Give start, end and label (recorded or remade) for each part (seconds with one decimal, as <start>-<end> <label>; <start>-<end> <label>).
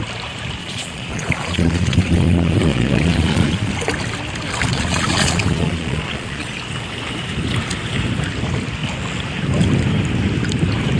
0.0-0.6 recorded; 0.6-3.7 remade; 3.7-4.7 recorded; 4.7-6.5 remade; 6.5-11.0 recorded